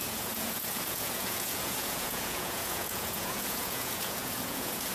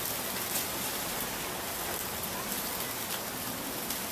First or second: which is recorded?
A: second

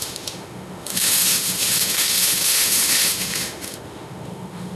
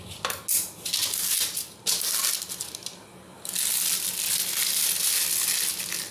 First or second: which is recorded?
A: second